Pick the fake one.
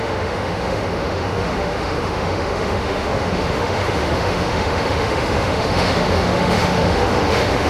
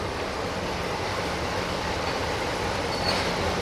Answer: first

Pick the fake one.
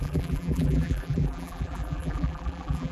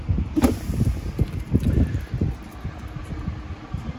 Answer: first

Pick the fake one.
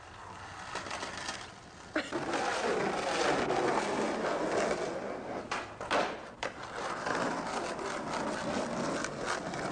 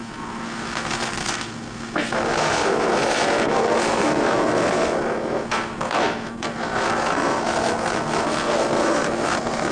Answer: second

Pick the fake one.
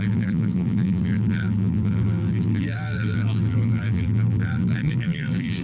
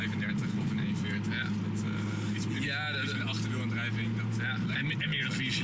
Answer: first